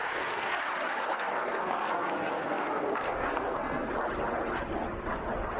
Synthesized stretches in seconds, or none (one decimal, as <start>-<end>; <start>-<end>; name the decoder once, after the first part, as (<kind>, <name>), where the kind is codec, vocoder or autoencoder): 0.0-0.6 (codec, SNAC); 1.0-3.9